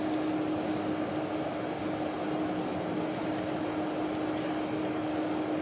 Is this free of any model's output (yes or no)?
yes